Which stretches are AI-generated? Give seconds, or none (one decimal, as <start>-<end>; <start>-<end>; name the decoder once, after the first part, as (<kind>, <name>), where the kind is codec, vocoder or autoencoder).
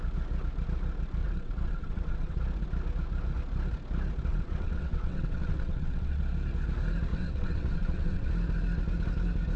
1.2-2.4 (vocoder, WaveNeXt); 4.3-6.2; 7.1-8.3